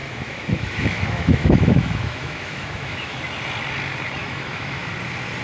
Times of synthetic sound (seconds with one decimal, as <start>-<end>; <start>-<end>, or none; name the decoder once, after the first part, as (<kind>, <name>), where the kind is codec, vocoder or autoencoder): 0.0-3.2 (autoencoder, DAC-VAE); 4.2-4.9